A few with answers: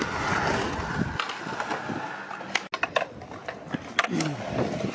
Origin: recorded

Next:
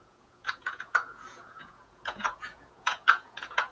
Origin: remade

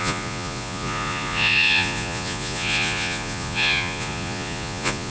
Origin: remade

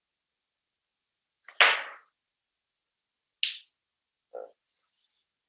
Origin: recorded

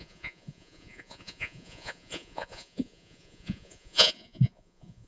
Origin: remade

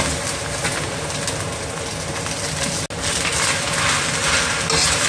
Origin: recorded